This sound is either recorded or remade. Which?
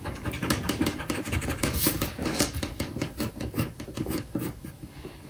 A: remade